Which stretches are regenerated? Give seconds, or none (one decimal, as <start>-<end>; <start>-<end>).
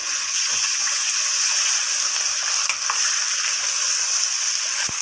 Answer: 0.0-1.8